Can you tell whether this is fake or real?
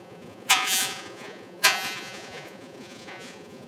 fake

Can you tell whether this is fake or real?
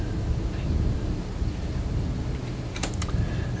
real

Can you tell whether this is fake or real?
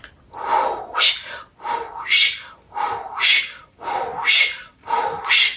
real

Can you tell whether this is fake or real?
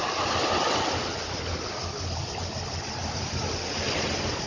real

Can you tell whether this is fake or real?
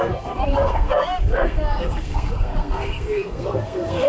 fake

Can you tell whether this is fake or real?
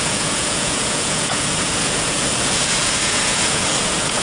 fake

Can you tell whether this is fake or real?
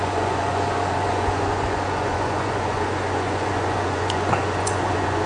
fake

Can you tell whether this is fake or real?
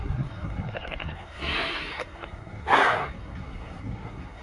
fake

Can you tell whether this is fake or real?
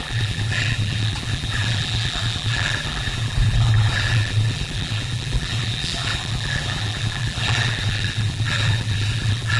fake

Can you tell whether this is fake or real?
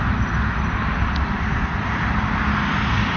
real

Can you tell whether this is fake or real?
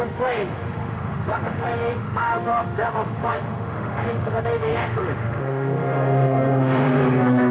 fake